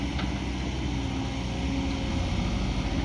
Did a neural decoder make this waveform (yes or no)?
no